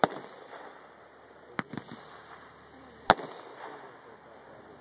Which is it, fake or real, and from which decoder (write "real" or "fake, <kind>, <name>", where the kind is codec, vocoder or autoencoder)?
real